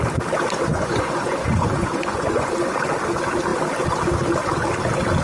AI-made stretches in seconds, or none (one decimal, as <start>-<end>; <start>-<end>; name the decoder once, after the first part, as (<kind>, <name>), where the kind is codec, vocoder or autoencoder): 0.7-2.5 (vocoder, Vocos)